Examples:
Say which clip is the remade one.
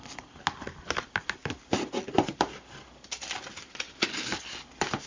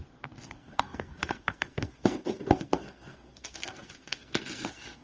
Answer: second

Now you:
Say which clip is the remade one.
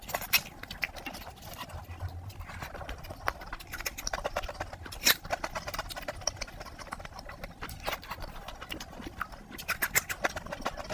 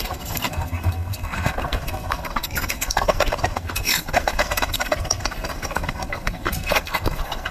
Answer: second